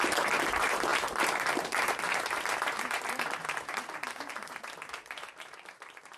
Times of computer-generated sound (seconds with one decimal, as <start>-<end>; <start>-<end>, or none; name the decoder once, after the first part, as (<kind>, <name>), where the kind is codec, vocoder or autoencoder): 0.0-6.2 (vocoder, BigVGAN v2)